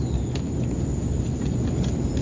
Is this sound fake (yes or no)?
no